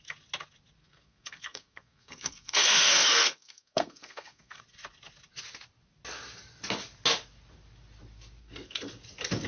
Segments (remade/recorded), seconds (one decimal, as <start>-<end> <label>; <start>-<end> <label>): 0.0-0.8 recorded; 0.8-4.6 remade; 4.6-8.4 recorded; 8.4-8.9 remade; 8.9-9.5 recorded